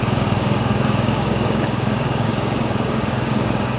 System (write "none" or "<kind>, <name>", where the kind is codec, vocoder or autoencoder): codec, DAC